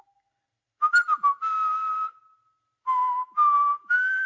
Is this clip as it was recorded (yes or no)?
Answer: yes